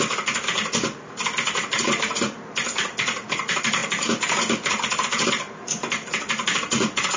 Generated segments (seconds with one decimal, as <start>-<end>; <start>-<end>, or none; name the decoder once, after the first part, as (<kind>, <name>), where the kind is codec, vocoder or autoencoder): none